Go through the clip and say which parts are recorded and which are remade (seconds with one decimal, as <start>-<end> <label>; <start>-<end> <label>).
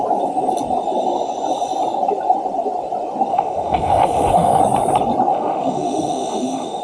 0.0-3.3 recorded; 3.3-4.6 remade; 4.6-5.3 recorded; 5.3-6.8 remade